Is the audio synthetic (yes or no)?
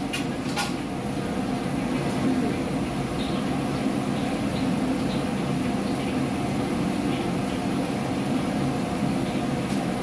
no